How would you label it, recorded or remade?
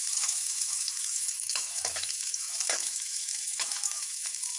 remade